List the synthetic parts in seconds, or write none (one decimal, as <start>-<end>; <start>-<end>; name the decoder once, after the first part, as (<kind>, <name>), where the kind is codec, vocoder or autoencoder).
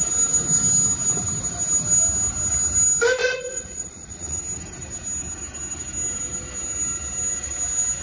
3.2-4.4 (vocoder, Vocos)